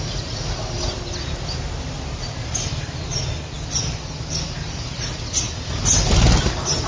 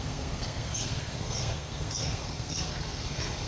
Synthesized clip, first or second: second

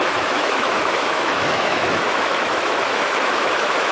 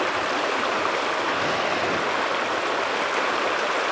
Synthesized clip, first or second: first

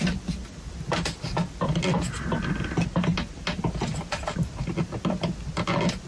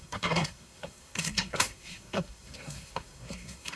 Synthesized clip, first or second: second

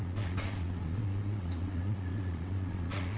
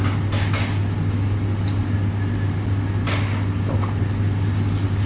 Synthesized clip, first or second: first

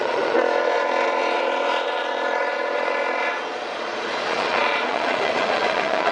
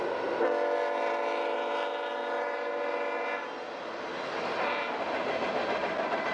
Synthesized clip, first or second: first